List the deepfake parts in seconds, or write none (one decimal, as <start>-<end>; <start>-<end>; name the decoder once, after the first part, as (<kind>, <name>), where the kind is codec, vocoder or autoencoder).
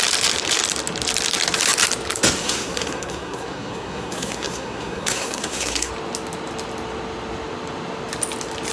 2.4-5.9 (codec, SNAC)